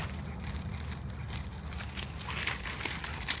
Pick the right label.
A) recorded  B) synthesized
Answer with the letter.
A